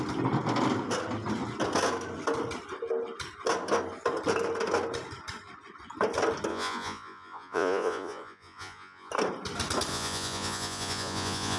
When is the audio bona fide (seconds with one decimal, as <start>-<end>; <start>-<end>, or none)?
0.0-6.5; 9.1-9.9